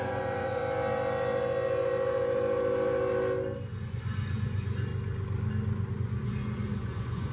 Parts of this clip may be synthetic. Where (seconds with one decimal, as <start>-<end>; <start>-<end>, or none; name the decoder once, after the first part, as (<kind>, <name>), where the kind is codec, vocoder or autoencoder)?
0.0-0.6 (vocoder, Vocos); 3.8-4.9; 5.9-7.3